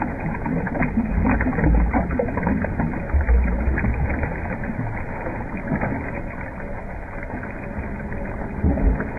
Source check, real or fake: real